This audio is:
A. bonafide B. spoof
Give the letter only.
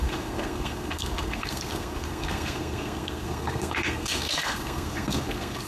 B